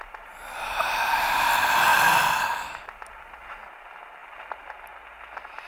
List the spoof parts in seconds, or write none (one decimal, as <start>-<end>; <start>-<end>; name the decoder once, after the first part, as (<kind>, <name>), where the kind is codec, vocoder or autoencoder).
1.9-3.2 (vocoder, BigVGAN v2); 4.2-4.7